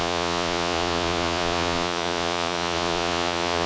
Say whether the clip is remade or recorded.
remade